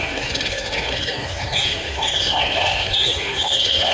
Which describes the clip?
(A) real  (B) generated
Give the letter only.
B